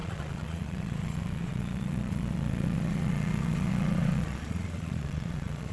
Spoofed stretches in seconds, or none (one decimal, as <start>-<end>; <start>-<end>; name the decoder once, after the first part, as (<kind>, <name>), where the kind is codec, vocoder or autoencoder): 0.0-5.7 (vocoder, Vocos)